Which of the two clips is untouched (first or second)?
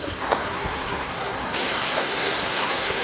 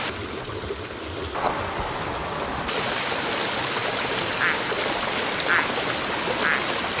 second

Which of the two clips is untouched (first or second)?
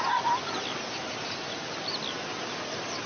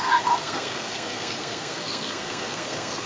first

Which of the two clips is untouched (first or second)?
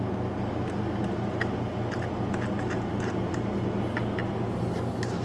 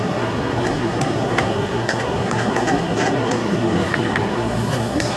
first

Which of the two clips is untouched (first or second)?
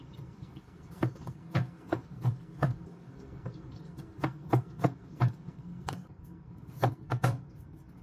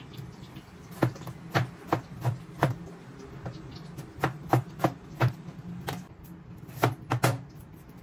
second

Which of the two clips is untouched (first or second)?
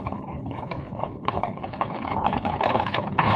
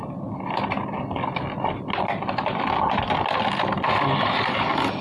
second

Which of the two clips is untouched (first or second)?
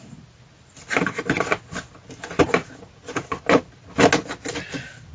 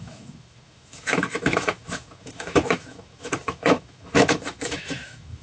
first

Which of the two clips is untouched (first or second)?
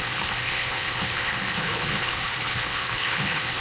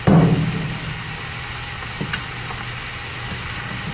second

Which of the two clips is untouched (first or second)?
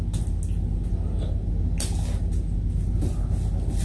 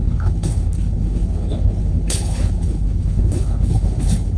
first